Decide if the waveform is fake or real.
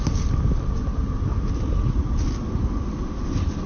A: real